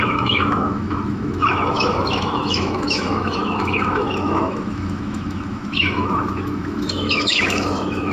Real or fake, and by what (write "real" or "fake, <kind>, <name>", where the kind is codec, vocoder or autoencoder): fake, autoencoder, DAC-VAE